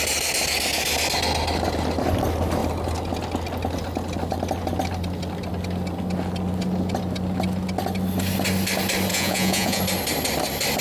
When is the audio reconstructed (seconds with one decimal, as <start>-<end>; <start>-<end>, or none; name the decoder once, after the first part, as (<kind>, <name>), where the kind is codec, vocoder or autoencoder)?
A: 9.1-9.8 (vocoder, Vocos)